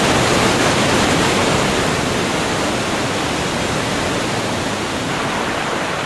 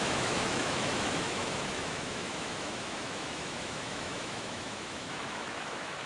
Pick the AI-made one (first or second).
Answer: second